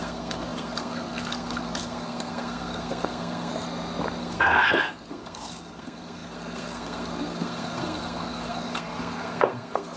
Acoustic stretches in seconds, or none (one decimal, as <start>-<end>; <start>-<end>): 3.5-4.2